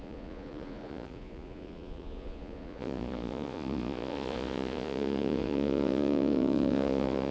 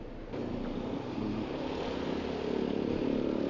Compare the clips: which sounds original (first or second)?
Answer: second